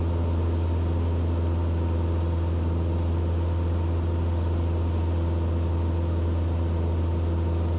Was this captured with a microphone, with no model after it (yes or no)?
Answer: yes